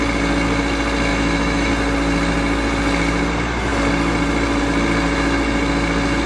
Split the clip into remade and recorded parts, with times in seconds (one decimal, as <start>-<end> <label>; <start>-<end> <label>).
0.0-1.1 recorded; 1.1-1.7 remade; 1.7-6.3 recorded